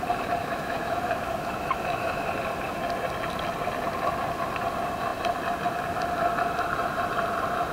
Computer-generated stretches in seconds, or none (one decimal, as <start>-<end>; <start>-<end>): 0.4-2.3